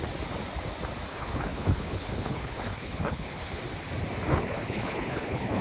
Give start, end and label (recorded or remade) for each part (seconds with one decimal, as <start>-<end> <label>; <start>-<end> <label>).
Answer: 0.0-1.1 recorded; 1.1-3.6 remade; 3.6-4.3 recorded; 4.3-5.6 remade